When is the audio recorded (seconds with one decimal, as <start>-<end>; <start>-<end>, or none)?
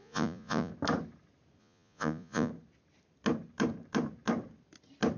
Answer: 0.7-1.6; 2.5-5.2